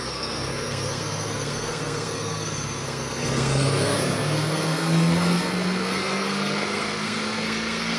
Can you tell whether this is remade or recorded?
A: remade